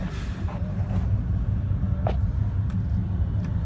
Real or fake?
real